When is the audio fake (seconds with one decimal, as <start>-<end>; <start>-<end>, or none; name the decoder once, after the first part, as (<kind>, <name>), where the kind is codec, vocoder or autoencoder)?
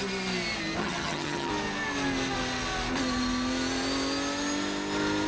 0.8-1.5 (vocoder, HiFi-GAN)